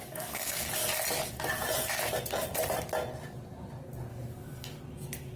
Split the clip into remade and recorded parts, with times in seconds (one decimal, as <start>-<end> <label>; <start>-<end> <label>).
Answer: 0.0-0.7 remade; 0.7-4.1 recorded; 4.1-4.8 remade; 4.8-5.4 recorded